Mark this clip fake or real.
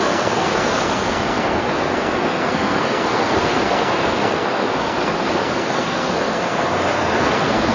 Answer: fake